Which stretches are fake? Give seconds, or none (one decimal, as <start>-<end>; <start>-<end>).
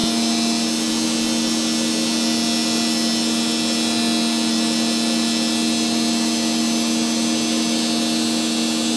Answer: none